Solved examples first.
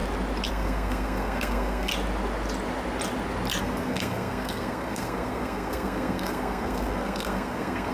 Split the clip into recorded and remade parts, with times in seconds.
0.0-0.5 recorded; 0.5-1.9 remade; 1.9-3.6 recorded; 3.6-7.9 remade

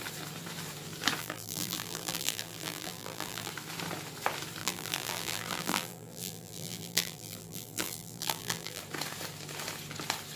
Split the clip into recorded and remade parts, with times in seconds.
0.0-1.2 recorded; 1.2-3.5 remade; 3.5-4.6 recorded; 4.6-8.8 remade; 8.8-10.4 recorded

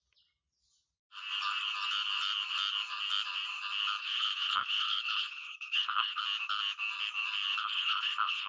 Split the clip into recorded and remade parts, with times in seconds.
0.0-4.0 recorded; 4.0-6.2 remade; 6.2-7.6 recorded; 7.6-8.5 remade

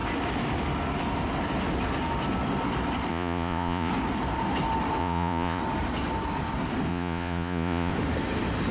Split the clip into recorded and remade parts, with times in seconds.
0.0-3.1 recorded; 3.1-3.9 remade; 3.9-5.0 recorded; 5.0-5.6 remade; 5.6-6.9 recorded; 6.9-7.9 remade; 7.9-8.7 recorded

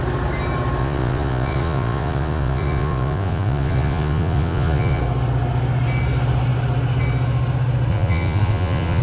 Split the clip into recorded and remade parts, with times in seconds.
0.0-0.8 recorded; 0.8-5.0 remade; 5.0-7.9 recorded; 7.9-9.0 remade